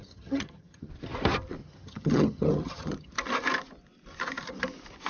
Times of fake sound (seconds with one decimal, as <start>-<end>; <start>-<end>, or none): 0.0-0.9; 1.6-3.1